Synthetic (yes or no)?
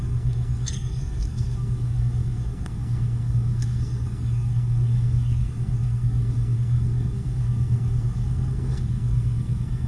yes